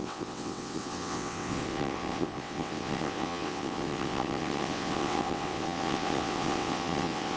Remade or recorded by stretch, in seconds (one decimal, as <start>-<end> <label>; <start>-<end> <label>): 0.0-7.4 remade